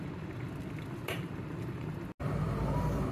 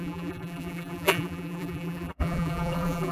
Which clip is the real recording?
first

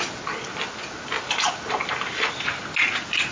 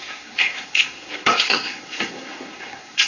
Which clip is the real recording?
first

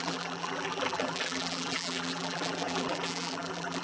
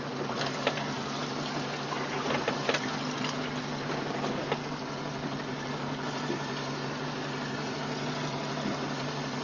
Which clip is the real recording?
second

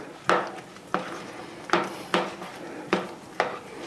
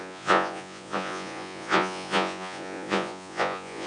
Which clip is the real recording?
first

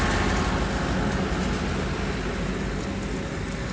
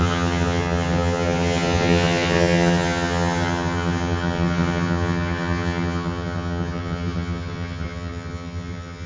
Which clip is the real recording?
first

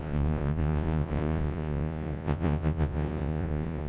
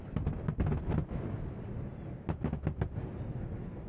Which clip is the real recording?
second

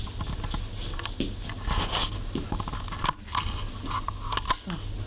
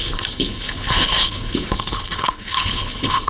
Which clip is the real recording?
first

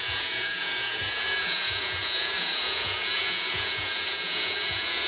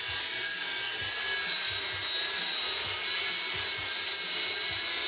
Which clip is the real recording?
second